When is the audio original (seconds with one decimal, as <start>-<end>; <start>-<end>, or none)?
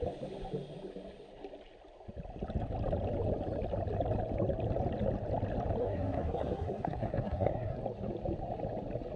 0.0-5.8; 7.8-9.2